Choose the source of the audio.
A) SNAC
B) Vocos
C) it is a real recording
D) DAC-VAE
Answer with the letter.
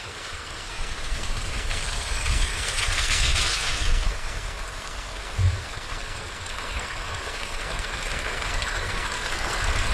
A